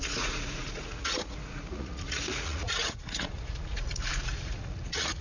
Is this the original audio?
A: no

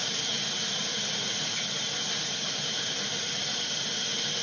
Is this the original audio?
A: yes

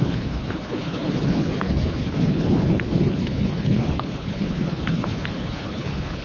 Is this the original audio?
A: no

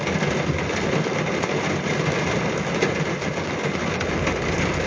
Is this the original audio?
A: yes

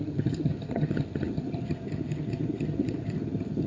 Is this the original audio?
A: no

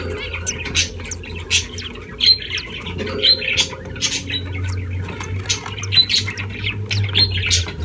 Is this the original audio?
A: yes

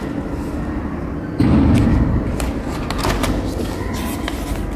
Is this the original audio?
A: yes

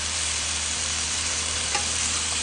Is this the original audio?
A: no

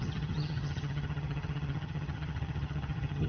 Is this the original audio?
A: no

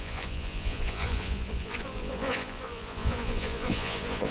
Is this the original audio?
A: no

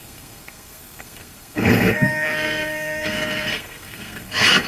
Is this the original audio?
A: no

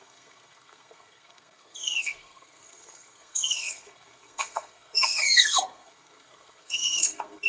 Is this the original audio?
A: no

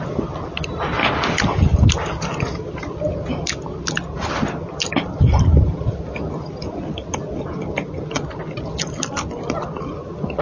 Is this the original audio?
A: yes